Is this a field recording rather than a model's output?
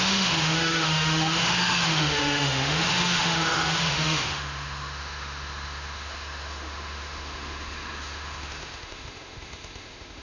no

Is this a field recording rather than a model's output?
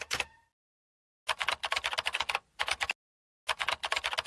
yes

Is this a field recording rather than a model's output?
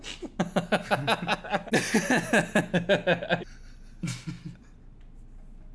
yes